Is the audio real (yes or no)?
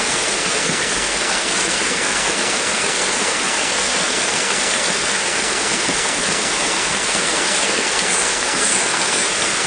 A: no